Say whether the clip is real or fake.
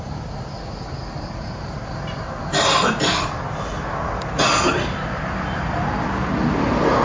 real